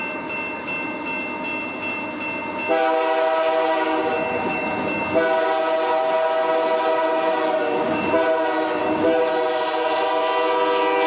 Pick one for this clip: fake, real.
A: real